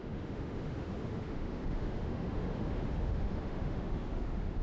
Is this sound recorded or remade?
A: remade